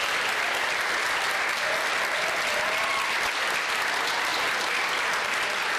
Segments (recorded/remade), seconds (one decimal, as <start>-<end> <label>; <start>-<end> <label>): 0.0-5.8 recorded